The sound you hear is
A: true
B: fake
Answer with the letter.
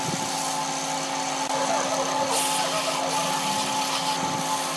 A